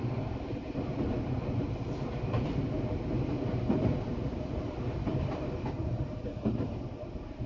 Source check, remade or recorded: remade